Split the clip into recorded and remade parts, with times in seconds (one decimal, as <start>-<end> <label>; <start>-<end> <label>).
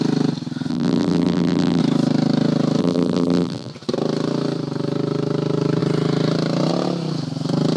0.0-0.7 recorded; 0.7-1.8 remade; 1.8-2.8 recorded; 2.8-3.7 remade; 3.7-7.8 recorded